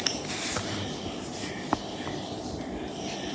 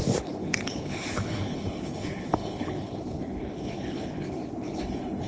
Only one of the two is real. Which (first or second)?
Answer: first